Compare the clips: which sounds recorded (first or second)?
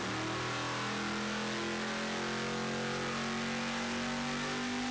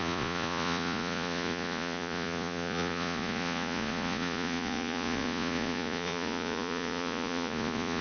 first